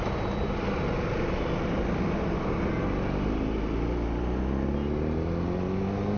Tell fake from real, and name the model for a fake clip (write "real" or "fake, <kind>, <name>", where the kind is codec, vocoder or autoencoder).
real